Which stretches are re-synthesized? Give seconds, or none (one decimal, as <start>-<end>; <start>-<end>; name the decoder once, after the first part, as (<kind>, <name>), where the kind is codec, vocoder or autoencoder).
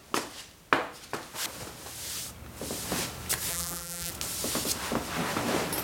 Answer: 3.5-4.1 (vocoder, BigVGAN v2)